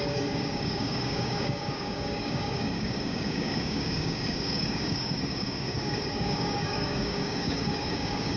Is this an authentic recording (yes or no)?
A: no